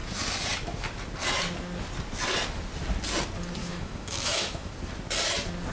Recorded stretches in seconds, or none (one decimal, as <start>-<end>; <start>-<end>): 0.0-3.6; 4.7-5.7